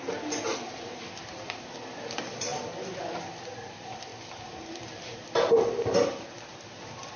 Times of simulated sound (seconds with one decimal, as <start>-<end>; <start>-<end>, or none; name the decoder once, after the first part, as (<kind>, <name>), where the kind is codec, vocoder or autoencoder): 2.5-3.1 (vocoder, BigVGAN v2); 4.1-5.0